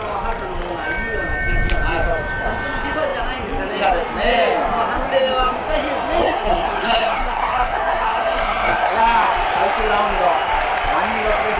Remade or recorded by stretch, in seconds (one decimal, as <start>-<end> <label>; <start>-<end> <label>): 0.0-6.2 recorded; 6.2-9.0 remade; 9.0-11.6 recorded